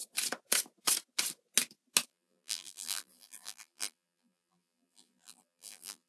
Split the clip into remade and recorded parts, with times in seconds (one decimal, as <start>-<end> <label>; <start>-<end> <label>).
0.0-2.1 recorded; 2.1-6.1 remade